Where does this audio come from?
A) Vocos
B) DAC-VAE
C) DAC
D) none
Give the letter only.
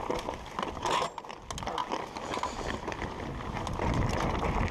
D